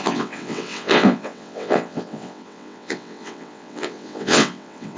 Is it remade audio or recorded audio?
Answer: remade